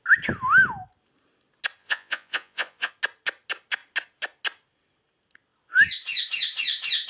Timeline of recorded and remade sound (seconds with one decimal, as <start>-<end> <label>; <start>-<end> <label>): 0.0-1.8 recorded; 1.8-2.9 remade; 2.9-7.1 recorded